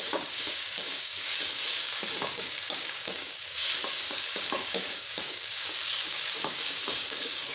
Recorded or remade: remade